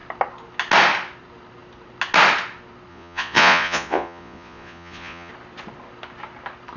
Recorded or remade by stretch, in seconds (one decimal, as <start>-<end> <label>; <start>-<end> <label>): 0.0-2.9 recorded; 2.9-5.3 remade; 5.3-6.8 recorded